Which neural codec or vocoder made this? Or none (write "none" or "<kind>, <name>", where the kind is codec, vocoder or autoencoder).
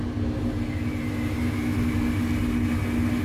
none